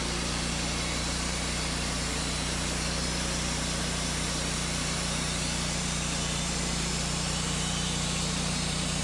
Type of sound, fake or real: fake